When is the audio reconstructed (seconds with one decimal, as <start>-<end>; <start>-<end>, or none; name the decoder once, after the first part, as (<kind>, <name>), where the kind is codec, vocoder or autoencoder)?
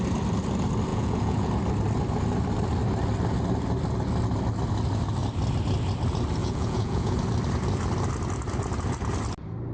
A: 0.9-1.5 (vocoder, Vocos); 6.4-7.2